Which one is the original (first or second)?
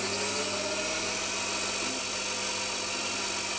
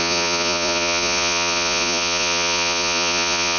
first